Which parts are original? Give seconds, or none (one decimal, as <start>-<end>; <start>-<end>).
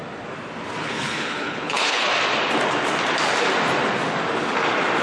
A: 0.0-0.8; 2.1-5.0